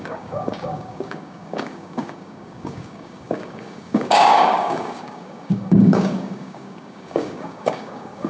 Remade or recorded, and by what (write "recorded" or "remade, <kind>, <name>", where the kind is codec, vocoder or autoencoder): remade, codec, DAC